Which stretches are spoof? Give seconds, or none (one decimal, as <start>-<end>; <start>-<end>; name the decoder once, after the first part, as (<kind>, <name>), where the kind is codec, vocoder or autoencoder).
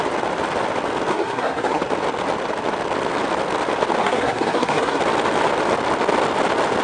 1.1-1.8 (codec, SNAC); 4.0-5.0